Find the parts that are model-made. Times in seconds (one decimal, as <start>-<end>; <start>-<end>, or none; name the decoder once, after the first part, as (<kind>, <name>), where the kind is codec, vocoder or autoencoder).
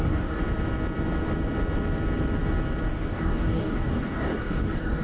0.0-0.4 (codec, DAC); 2.9-5.0